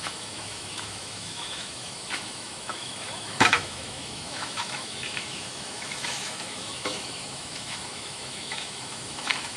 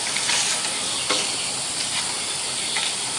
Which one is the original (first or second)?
second